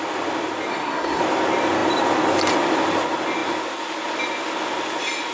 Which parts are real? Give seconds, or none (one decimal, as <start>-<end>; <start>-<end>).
0.0-0.7; 1.2-5.3